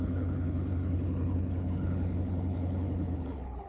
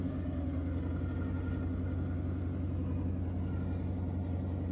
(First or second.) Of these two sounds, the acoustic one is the second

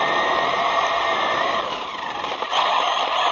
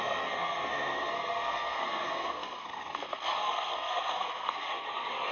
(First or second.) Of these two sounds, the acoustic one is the first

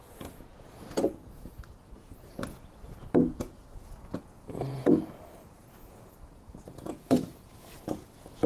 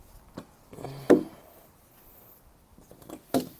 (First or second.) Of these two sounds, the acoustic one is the second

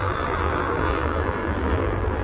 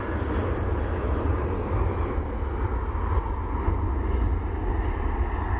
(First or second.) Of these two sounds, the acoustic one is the second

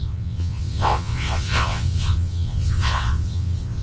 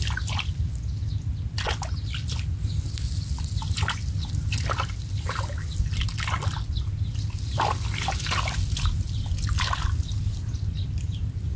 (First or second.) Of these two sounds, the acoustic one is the second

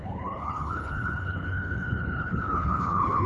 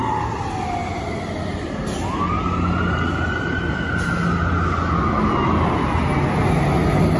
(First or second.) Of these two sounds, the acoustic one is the second